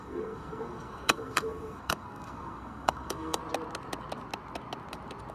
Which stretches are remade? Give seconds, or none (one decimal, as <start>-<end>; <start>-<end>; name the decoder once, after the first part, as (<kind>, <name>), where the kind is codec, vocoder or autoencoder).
0.0-3.4 (codec, SNAC)